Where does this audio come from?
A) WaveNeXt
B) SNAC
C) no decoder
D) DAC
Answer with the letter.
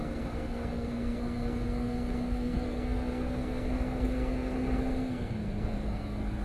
B